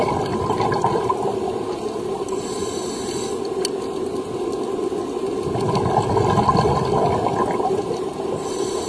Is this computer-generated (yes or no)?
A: no